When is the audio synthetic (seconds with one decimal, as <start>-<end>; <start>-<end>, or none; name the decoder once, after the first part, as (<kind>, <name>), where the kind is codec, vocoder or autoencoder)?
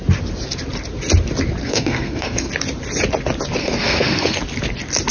1.6-2.5 (codec, SNAC); 3.6-4.4